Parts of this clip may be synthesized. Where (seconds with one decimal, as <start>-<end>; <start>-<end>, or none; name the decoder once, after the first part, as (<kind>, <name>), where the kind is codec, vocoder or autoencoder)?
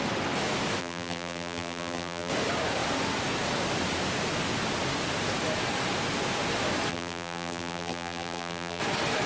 0.8-2.3 (vocoder, BigVGAN v2); 6.9-8.8